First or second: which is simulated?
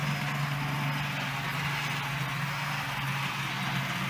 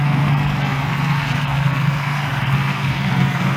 second